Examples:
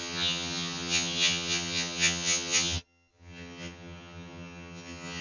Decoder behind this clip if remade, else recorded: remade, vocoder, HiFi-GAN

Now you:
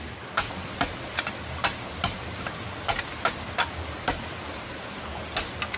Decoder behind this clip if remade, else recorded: recorded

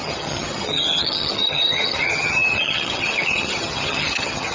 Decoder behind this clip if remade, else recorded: remade, vocoder, HiFi-GAN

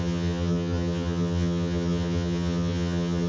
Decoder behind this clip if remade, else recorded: remade, vocoder, HiFi-GAN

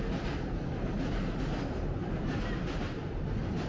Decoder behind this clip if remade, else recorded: recorded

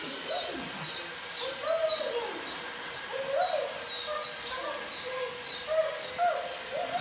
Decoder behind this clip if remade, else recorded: recorded